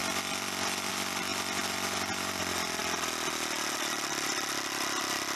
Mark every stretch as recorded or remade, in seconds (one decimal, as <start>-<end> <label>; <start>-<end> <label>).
0.0-1.3 remade; 1.3-2.4 recorded; 2.4-5.4 remade